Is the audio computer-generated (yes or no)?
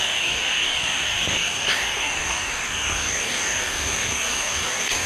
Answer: yes